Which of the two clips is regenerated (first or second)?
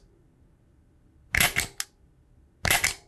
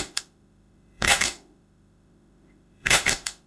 second